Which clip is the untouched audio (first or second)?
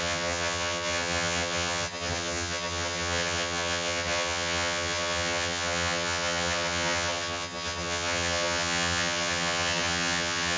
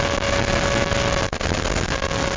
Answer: second